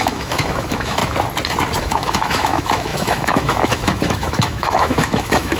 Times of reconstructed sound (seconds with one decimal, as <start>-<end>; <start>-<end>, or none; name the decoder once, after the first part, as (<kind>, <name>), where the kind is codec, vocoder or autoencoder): 0.0-1.0 (autoencoder, DAC-VAE); 1.8-5.6